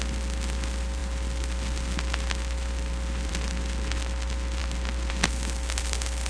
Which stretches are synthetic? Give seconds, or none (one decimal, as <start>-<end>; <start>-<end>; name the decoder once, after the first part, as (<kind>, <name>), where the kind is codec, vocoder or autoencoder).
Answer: none